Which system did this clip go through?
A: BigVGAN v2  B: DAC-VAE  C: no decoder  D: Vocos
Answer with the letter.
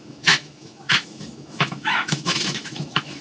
B